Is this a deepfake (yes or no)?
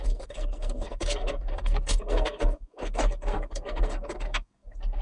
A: yes